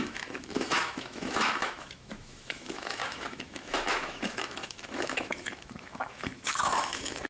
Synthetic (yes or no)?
yes